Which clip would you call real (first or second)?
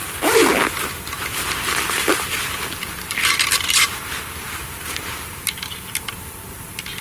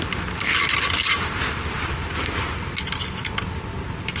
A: second